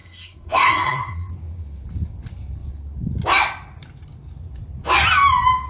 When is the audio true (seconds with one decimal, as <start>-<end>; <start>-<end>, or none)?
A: 1.3-5.7